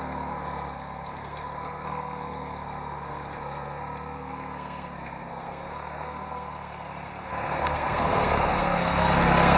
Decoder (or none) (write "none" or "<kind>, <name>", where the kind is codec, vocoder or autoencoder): codec, SNAC